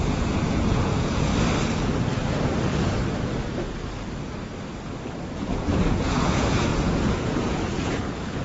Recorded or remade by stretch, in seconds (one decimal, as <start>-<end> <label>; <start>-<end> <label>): 0.0-1.3 remade; 1.3-5.4 recorded; 5.4-8.4 remade